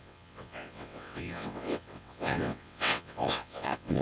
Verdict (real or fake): fake